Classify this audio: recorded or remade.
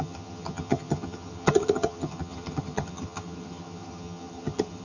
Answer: remade